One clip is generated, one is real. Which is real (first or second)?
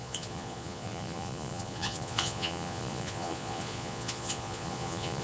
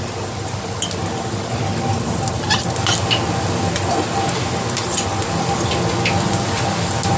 second